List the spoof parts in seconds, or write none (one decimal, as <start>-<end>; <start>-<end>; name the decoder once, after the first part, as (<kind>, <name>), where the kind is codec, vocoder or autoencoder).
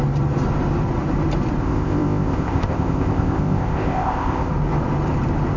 1.6-4.5 (codec, ZipCodec)